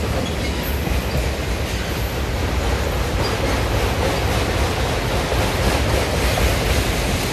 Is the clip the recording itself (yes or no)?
yes